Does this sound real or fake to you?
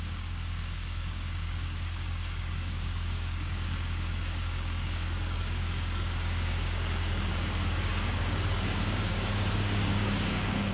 fake